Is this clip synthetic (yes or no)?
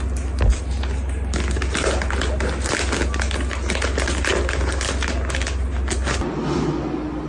no